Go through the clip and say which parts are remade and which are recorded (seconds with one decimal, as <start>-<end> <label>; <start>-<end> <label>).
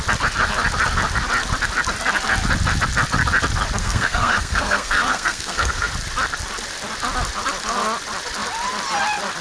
0.0-3.8 recorded; 3.8-5.9 remade; 5.9-9.4 recorded